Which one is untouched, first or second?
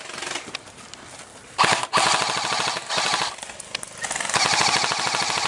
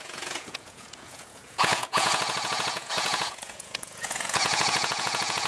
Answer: first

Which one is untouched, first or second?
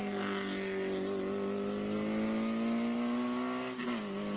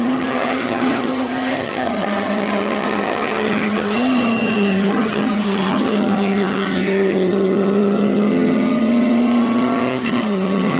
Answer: first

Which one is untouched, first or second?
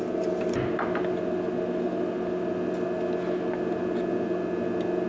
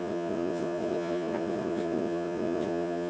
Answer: first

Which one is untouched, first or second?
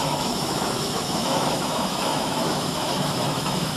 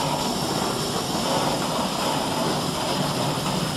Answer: second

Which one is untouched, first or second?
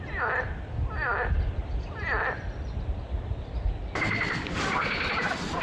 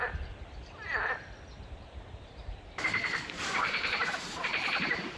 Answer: first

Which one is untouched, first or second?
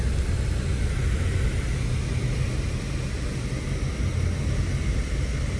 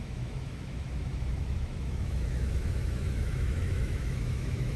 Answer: first